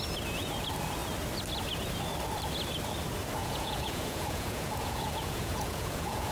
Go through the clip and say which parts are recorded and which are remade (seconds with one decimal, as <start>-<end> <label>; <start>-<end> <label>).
0.0-3.4 recorded; 3.4-6.3 remade